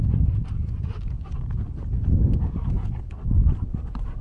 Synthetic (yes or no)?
no